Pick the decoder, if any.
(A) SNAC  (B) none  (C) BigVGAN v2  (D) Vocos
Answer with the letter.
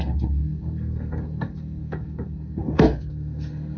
A